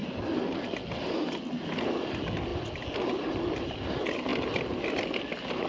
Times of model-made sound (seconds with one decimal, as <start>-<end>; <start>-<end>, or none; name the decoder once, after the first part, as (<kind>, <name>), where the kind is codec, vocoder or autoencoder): none